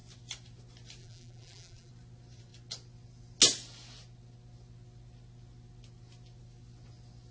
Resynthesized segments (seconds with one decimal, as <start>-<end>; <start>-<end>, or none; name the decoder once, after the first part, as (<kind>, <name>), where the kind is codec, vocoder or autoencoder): 1.0-1.9 (vocoder, BigVGAN v2)